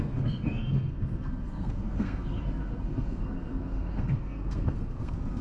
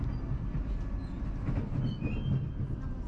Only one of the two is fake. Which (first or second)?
first